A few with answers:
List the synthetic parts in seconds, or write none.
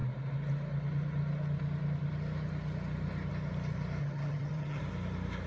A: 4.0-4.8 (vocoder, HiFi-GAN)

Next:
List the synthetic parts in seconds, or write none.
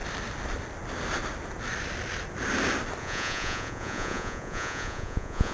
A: 3.0-5.5 (vocoder, Vocos)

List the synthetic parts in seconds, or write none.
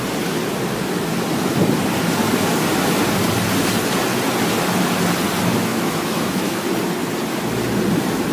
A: 5.7-6.6 (autoencoder, DAC-VAE)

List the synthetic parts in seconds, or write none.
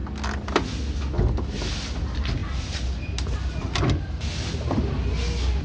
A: none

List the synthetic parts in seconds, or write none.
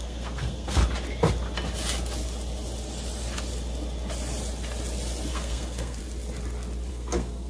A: 0.0-0.8 (codec, SNAC); 5.3-6.0; 6.9-7.5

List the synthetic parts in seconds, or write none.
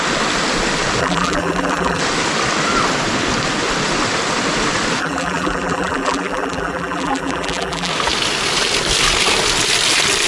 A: 1.0-2.0 (vocoder, BigVGAN v2); 5.0-7.9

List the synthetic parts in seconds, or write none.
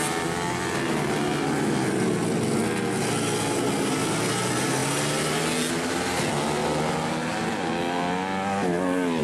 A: none